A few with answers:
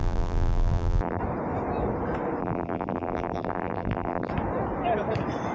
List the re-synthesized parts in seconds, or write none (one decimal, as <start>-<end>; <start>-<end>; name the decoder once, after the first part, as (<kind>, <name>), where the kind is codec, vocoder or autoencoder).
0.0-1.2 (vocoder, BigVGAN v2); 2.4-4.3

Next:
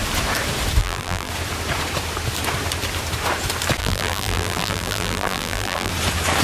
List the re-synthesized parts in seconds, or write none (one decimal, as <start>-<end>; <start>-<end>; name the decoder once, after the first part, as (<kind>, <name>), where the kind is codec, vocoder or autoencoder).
0.8-1.3 (vocoder, BigVGAN v2); 3.8-5.9

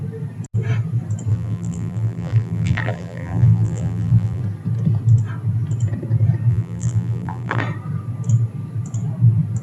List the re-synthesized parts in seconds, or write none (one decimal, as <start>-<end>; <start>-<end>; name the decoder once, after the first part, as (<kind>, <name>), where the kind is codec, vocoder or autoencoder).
1.3-4.4 (vocoder, BigVGAN v2); 6.5-7.6